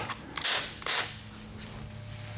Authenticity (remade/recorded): recorded